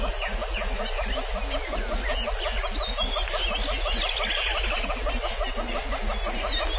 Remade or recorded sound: recorded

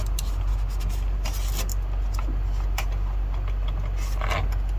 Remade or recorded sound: recorded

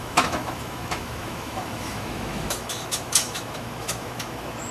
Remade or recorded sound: remade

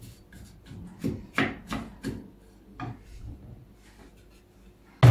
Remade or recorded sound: recorded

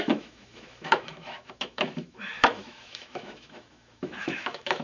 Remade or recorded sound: remade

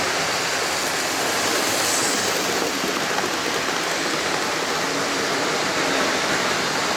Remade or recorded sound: recorded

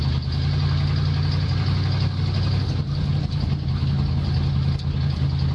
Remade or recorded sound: recorded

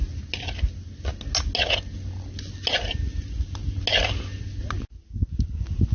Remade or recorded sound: recorded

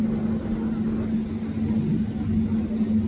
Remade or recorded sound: recorded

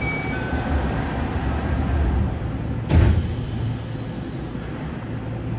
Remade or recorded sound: recorded